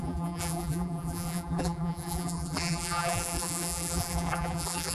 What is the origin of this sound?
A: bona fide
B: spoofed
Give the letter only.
B